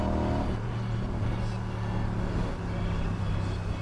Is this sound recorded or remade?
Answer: recorded